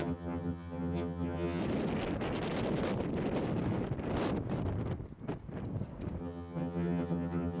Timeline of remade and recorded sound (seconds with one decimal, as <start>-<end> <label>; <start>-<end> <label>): 0.0-1.6 remade; 1.6-6.2 recorded; 6.2-7.6 remade